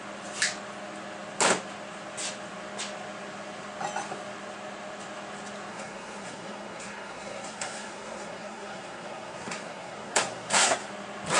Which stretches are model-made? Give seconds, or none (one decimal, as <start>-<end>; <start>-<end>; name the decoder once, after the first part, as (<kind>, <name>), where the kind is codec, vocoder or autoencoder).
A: 5.7-10.9 (codec, SNAC)